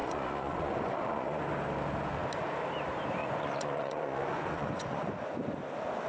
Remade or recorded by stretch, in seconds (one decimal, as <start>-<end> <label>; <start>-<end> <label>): 0.0-1.4 remade; 1.4-3.2 recorded; 3.2-5.1 remade; 5.1-6.1 recorded